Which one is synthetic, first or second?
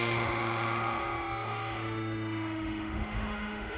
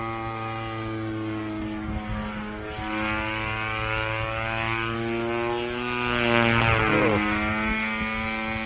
first